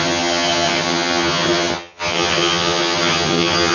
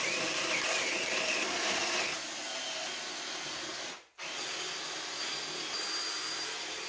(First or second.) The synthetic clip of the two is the first